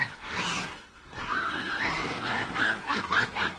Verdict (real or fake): fake